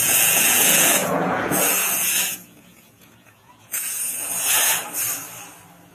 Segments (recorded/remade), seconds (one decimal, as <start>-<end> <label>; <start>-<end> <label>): 0.0-4.8 remade; 4.8-5.9 recorded